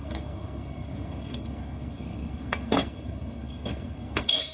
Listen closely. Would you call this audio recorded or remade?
remade